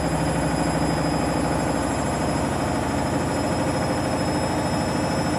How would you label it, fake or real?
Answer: real